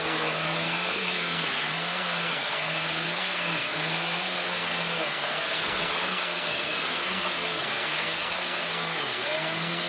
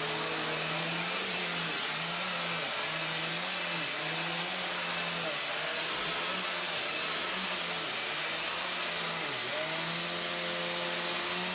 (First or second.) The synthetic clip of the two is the first